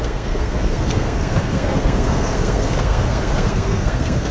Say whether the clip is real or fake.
fake